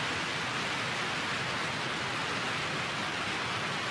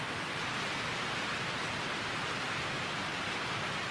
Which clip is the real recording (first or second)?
first